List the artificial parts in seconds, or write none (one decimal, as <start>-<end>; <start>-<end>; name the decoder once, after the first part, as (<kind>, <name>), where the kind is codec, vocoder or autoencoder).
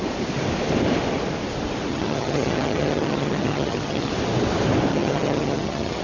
1.9-4.1 (vocoder, HiFi-GAN); 4.9-6.0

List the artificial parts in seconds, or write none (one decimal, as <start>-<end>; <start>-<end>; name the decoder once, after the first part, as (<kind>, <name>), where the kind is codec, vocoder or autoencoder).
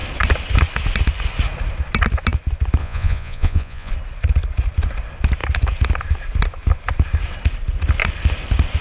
2.8-3.9 (vocoder, Vocos)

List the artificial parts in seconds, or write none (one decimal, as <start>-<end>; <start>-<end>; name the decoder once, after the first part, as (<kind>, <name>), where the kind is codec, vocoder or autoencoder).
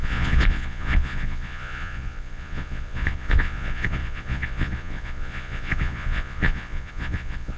0.0-7.6 (vocoder, Vocos)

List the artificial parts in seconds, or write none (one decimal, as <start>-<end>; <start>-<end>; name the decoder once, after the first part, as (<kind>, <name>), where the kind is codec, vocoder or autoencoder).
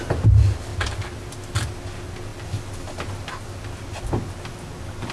none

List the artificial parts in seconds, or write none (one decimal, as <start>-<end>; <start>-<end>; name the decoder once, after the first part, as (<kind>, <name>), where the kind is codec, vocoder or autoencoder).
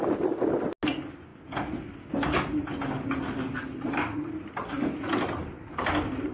none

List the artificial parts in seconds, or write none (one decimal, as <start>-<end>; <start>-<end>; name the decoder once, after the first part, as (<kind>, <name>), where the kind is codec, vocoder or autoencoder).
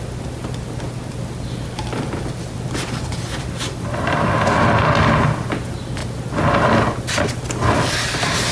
none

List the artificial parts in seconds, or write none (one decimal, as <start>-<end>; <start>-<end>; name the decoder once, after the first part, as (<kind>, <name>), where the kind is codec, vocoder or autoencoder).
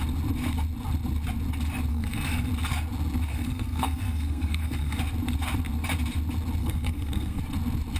1.9-2.5 (codec, SNAC); 3.3-5.0; 6.6-7.4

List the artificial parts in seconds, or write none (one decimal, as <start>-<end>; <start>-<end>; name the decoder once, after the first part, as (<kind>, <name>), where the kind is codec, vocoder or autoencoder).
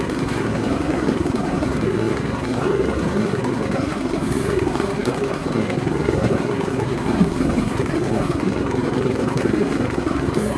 0.0-10.6 (codec, SNAC)